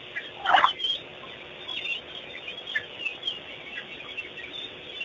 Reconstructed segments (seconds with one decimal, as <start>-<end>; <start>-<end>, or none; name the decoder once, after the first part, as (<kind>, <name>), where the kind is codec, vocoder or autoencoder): none